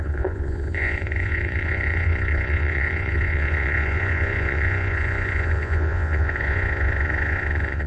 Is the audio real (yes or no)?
no